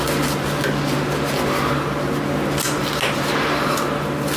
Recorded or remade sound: recorded